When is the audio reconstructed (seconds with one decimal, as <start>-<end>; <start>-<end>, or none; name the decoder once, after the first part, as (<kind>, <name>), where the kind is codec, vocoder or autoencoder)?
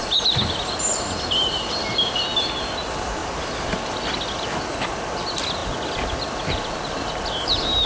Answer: none